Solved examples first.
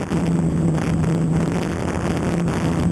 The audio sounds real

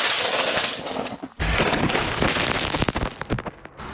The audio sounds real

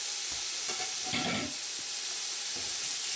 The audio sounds real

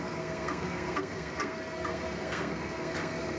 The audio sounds fake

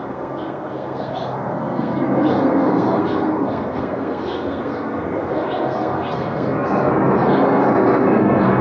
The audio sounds fake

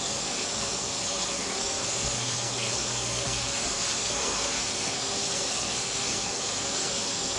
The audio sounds fake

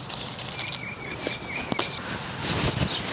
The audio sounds real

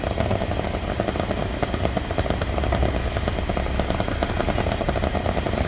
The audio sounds real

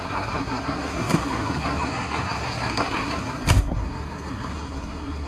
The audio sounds fake